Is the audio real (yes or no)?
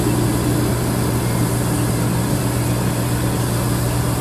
yes